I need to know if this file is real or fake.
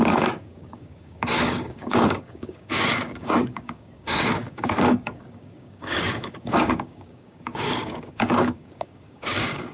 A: fake